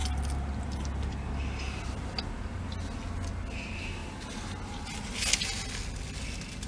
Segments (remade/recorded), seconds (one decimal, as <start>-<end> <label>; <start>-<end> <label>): 0.0-6.7 recorded